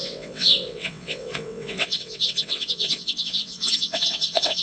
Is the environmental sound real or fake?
fake